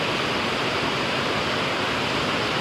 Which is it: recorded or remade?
recorded